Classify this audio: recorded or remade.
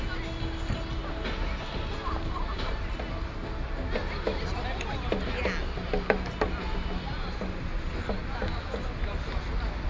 recorded